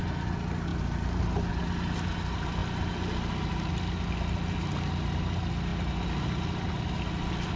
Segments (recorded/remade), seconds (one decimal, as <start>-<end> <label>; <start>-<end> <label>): 0.0-7.6 recorded